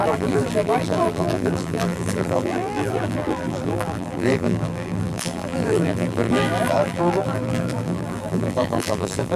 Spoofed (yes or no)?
yes